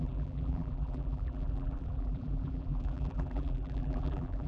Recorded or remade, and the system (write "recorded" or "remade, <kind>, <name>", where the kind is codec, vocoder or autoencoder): remade, vocoder, BigVGAN v2